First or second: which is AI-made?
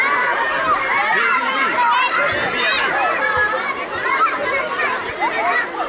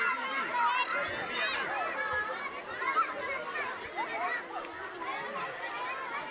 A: first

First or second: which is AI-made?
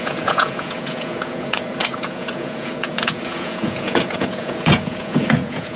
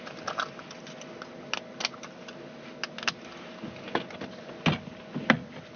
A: first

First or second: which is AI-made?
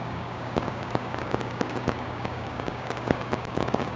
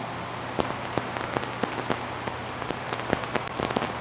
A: first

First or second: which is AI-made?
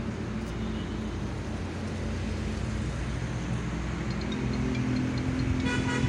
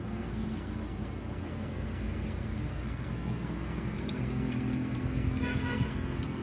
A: second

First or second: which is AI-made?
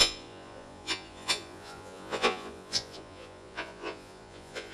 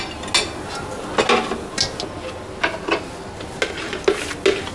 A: first